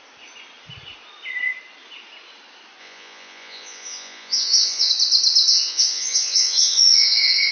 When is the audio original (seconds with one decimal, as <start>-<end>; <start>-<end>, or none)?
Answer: 0.0-2.8; 4.9-5.5